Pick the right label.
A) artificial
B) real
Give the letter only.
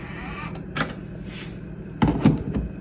B